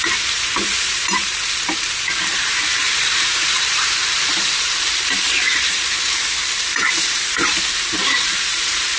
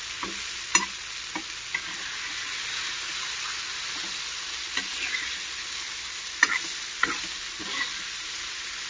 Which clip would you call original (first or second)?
second